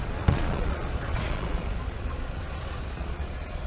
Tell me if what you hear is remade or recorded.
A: remade